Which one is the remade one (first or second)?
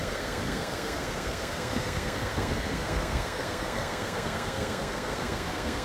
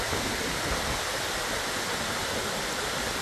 first